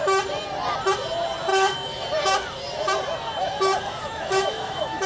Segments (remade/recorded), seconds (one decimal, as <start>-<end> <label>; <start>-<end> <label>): 0.0-1.5 recorded; 1.5-2.0 remade; 2.0-4.0 recorded; 4.0-5.1 remade